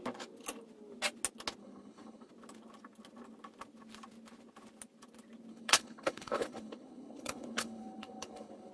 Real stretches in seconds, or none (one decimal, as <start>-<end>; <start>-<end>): 0.0-1.6; 2.3-5.5